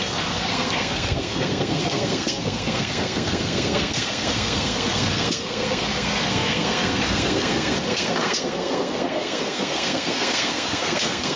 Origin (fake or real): fake